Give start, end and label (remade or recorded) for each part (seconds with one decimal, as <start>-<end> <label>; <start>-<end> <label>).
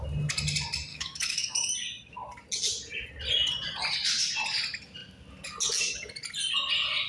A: 0.0-0.9 recorded; 0.9-1.7 remade; 1.7-7.1 recorded